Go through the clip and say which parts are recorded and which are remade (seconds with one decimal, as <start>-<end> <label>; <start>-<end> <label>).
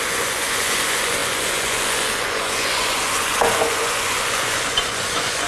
0.0-5.5 remade